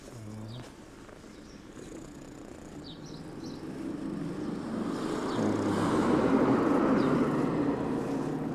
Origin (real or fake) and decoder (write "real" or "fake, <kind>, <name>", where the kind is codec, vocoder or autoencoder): real